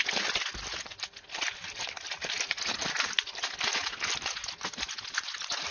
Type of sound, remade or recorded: recorded